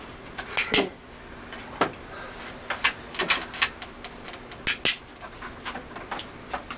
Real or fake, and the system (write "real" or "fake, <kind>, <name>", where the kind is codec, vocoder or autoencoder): real